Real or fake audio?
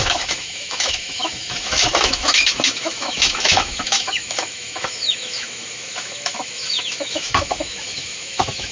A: fake